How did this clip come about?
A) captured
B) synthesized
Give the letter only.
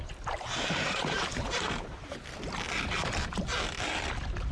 A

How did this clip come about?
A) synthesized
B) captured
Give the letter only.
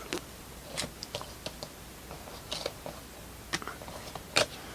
B